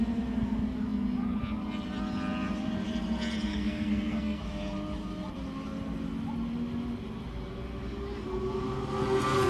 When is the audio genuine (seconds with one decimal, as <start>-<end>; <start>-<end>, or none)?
0.0-3.5; 4.4-9.5